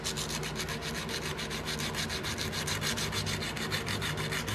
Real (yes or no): yes